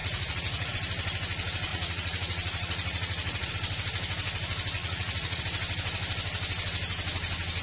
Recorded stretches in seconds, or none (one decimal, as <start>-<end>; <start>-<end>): 0.7-1.7; 3.5-4.8; 5.4-7.6